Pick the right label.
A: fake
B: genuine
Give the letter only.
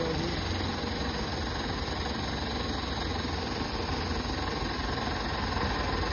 B